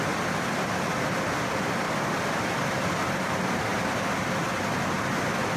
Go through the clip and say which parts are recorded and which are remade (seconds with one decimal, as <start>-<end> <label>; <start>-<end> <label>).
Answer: 0.0-5.6 recorded